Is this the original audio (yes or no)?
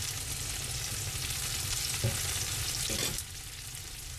yes